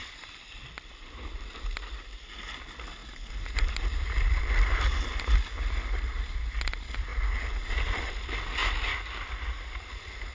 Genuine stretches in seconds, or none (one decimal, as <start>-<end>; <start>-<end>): 2.3-8.6; 9.8-10.3